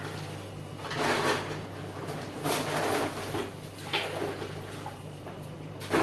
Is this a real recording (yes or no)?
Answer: yes